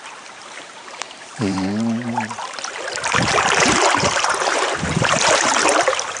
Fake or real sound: fake